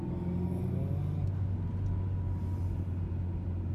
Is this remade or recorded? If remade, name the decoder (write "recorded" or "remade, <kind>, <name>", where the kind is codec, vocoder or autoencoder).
recorded